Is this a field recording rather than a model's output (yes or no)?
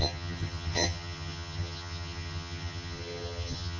no